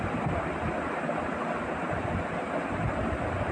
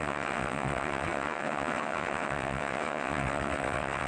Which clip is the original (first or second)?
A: first